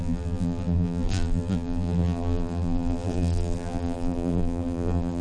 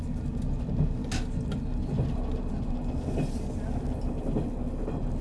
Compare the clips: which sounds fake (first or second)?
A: first